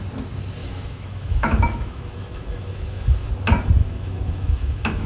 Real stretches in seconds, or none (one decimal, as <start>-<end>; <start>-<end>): 0.0-0.6; 3.3-3.8